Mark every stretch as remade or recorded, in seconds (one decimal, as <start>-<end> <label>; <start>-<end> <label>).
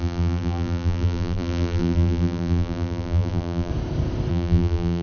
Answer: 0.0-3.7 remade; 3.7-4.3 recorded; 4.3-5.0 remade